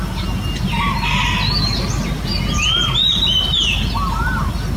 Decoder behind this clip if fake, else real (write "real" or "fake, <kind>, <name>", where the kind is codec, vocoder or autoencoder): real